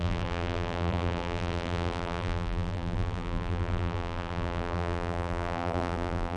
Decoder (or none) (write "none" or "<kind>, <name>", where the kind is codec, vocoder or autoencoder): vocoder, BigVGAN v2